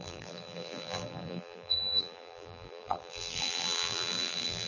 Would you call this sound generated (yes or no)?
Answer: yes